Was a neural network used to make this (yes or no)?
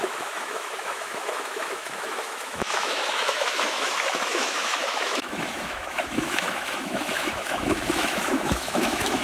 yes